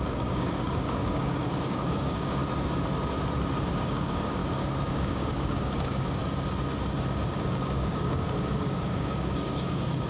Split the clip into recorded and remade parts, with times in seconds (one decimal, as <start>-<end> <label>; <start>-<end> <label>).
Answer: 0.0-2.4 remade; 2.4-3.6 recorded; 3.6-4.4 remade; 4.4-4.9 recorded; 4.9-6.2 remade; 6.2-7.3 recorded; 7.3-10.1 remade